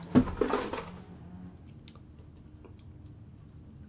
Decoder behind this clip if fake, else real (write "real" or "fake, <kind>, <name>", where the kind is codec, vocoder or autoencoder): real